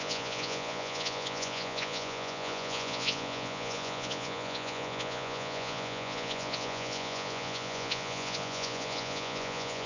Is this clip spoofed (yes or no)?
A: yes